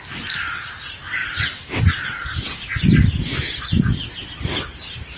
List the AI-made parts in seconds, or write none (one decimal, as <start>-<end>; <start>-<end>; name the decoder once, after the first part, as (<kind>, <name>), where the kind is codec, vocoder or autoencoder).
none